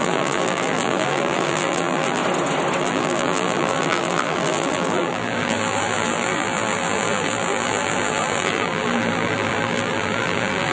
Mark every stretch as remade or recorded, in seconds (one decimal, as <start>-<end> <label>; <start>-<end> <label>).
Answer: 0.0-2.2 remade; 2.2-2.8 recorded; 2.8-10.7 remade